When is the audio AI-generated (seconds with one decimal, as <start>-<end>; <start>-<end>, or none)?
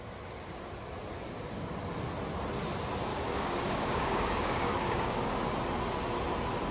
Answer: 3.1-5.4